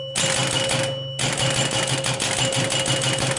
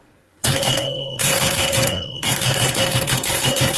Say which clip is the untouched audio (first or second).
first